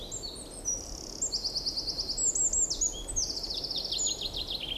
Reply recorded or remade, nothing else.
recorded